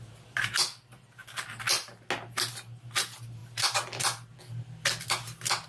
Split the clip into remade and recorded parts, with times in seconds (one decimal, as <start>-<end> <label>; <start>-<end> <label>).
0.0-5.7 recorded

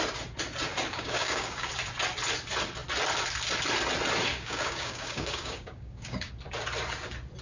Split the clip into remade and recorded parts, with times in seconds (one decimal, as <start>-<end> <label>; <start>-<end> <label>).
0.0-0.9 recorded; 0.9-1.7 remade; 1.7-4.3 recorded; 4.3-6.3 remade; 6.3-7.4 recorded

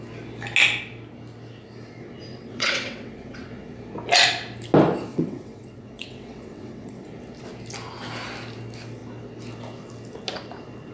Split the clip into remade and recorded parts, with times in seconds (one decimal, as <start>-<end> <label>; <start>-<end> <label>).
0.0-2.3 recorded; 2.3-3.5 remade; 3.5-5.1 recorded; 5.1-7.0 remade; 7.0-10.9 recorded

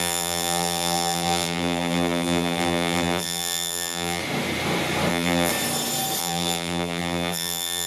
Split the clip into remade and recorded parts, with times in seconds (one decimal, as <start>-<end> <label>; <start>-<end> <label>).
0.0-4.2 remade; 4.2-5.1 recorded; 5.1-5.5 remade; 5.5-6.2 recorded; 6.2-7.9 remade

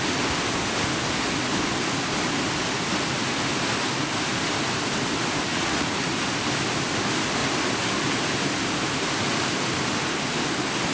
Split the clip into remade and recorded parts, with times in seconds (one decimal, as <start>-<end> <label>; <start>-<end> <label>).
0.0-5.5 recorded; 5.5-6.0 remade; 6.0-10.9 recorded

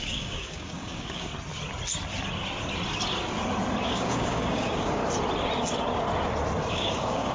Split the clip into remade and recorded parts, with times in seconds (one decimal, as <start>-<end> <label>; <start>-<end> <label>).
0.0-1.3 remade; 1.3-3.8 recorded; 3.8-5.0 remade; 5.0-6.7 recorded; 6.7-7.3 remade

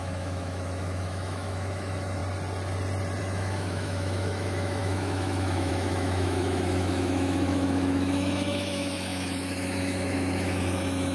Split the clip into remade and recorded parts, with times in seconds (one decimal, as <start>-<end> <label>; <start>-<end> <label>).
0.0-2.2 remade; 2.2-3.2 recorded; 3.2-11.1 remade

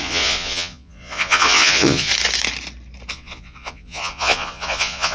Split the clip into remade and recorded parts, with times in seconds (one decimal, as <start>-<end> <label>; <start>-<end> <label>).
0.0-2.1 remade; 2.1-3.1 recorded; 3.1-5.1 remade